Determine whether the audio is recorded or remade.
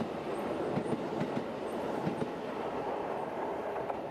recorded